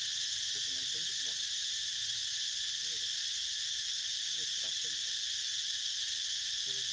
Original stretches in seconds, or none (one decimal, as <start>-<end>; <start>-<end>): 0.0-6.9